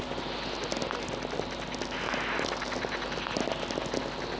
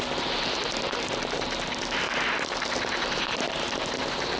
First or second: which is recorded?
first